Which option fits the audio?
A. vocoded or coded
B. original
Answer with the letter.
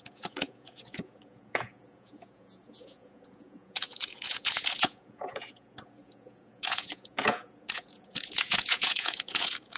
A